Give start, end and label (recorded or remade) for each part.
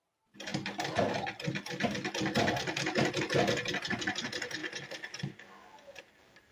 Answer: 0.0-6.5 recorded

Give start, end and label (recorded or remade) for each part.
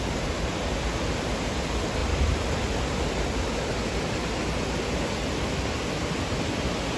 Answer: 0.0-7.0 recorded